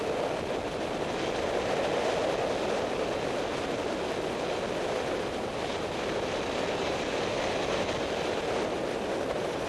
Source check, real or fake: real